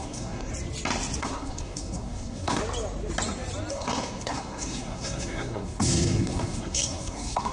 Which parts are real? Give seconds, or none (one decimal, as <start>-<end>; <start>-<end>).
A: 0.5-1.2; 2.6-3.7